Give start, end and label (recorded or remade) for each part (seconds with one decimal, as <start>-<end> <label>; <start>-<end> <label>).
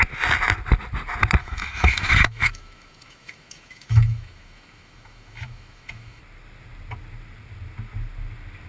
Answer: 0.0-1.4 recorded; 1.4-6.2 remade; 6.2-8.7 recorded